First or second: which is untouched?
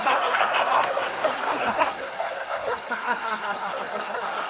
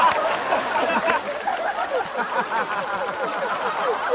second